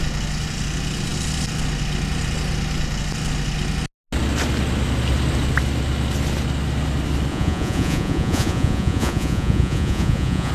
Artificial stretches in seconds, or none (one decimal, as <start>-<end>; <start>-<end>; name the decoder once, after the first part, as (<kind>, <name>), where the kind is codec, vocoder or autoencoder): 7.3-10.5 (vocoder, Vocos)